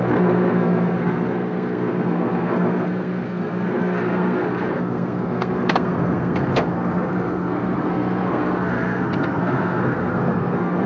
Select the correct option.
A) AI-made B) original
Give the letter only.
A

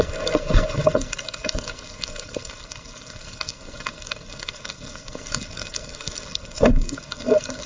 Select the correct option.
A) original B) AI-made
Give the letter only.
B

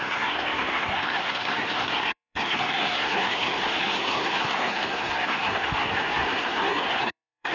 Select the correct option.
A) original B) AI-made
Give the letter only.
B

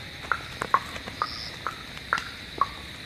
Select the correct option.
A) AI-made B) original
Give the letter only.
B